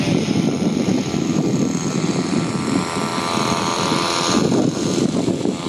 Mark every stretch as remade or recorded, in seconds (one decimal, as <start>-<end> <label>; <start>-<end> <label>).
0.0-5.7 recorded